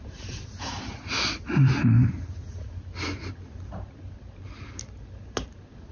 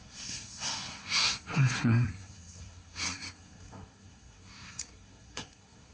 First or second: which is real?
first